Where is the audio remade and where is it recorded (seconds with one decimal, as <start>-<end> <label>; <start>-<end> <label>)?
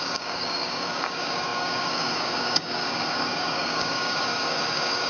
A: 0.0-5.1 remade